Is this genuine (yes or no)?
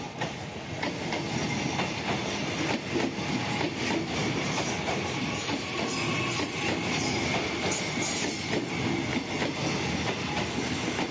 yes